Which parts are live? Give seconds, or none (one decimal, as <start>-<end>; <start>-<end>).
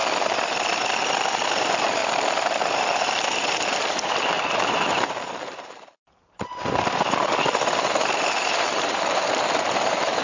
0.0-1.6; 2.0-2.6